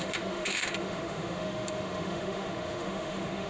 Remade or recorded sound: remade